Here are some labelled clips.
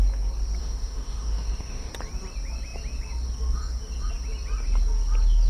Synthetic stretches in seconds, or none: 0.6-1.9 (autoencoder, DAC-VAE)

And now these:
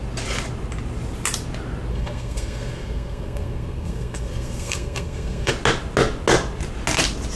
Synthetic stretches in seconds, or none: 1.9-5.5 (codec, SNAC)

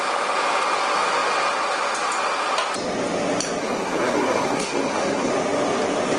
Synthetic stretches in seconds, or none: 3.6-5.3 (codec, SNAC)

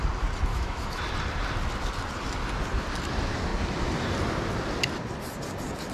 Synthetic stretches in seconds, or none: 0.5-1.0 (autoencoder, DAC-VAE)

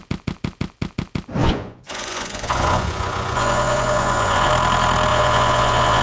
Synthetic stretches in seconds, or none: 1.4-4.5 (vocoder, Vocos); 5.1-6.0

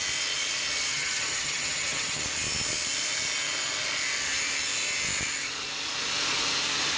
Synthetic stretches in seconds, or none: 0.9-2.2 (vocoder, HiFi-GAN)

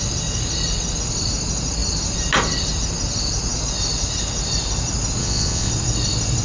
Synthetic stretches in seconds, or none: 5.2-5.7 (vocoder, Vocos)

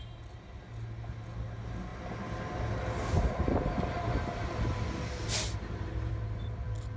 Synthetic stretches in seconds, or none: none